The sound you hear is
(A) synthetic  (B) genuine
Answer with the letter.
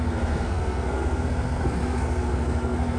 A